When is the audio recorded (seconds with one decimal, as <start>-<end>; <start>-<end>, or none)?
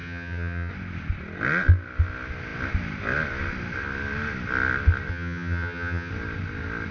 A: 0.7-5.1; 6.1-6.9